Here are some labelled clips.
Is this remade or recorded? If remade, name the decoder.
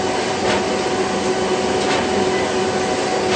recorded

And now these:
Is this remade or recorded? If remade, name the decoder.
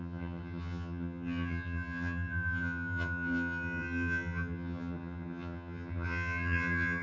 remade, vocoder, HiFi-GAN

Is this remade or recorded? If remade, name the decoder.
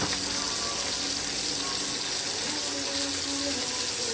recorded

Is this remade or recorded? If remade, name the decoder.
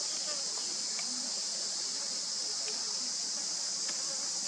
recorded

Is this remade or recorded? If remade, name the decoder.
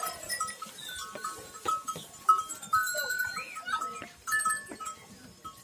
recorded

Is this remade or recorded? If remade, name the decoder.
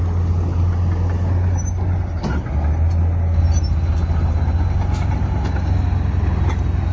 recorded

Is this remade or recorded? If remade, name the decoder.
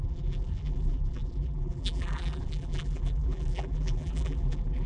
remade, vocoder, BigVGAN v2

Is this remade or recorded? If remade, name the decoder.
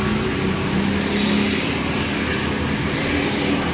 recorded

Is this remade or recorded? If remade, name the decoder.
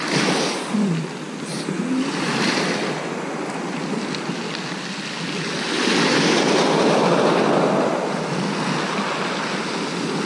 recorded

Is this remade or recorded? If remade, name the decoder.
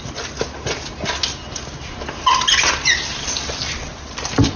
recorded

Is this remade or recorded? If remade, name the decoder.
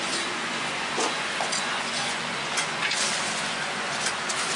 remade, vocoder, Vocos